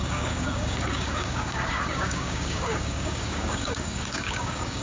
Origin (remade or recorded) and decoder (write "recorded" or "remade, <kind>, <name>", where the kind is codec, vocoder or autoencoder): remade, codec, DAC